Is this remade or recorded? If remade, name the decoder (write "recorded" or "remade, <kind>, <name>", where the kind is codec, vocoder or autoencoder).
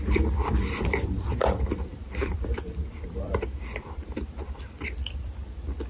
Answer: remade, vocoder, BigVGAN v2